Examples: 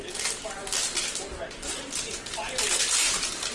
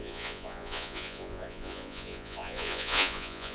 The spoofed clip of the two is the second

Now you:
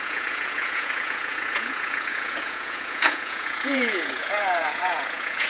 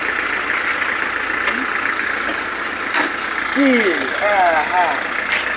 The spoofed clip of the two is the first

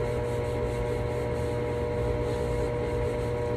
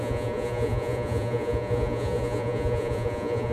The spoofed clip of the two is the second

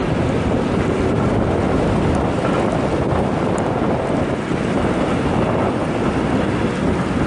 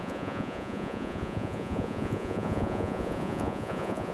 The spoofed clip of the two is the second